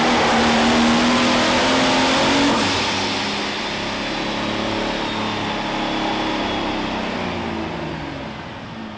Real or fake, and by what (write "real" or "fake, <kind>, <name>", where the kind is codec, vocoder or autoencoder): real